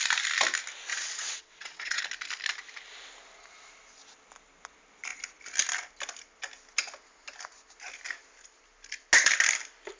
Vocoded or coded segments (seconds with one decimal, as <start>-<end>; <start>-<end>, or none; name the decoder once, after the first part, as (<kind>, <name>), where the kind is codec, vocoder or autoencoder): 0.9-2.0 (vocoder, WaveNeXt)

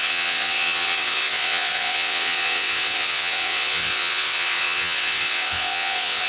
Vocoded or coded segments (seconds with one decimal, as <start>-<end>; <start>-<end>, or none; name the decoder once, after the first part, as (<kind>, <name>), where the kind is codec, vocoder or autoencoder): 0.0-6.3 (vocoder, WaveNeXt)

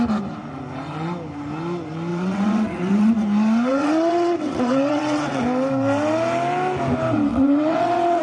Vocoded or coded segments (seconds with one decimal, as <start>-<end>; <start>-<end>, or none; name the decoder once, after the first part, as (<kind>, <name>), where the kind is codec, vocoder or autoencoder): 2.1-3.1 (vocoder, WaveNeXt); 3.7-5.4; 7.3-8.2

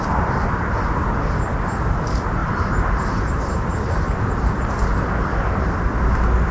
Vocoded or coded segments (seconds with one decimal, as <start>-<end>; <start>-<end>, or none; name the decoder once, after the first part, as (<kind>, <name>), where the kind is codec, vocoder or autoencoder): none